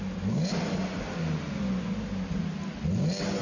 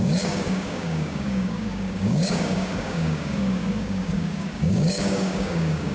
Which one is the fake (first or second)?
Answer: second